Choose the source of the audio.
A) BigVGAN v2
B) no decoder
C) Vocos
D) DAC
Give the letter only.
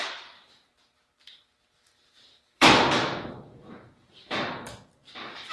A